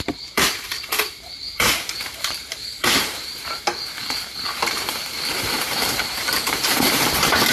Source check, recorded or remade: remade